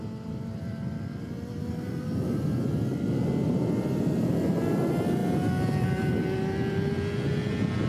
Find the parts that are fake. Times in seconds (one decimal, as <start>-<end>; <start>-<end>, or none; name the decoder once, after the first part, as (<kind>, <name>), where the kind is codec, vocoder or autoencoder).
none